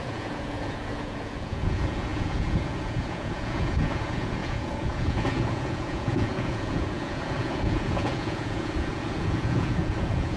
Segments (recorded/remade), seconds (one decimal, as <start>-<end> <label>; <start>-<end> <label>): 0.0-10.4 remade